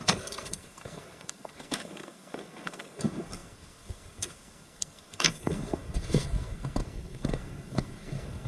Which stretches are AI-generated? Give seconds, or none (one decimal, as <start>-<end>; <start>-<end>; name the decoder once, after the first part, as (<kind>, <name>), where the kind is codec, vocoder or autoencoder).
0.0-8.5 (codec, SNAC)